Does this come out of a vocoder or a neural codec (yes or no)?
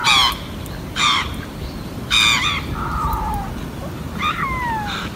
no